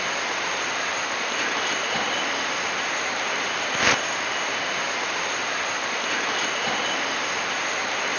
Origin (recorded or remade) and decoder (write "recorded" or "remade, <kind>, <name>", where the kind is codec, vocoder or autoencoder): recorded